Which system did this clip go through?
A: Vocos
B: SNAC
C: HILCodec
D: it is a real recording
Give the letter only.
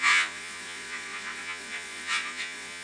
A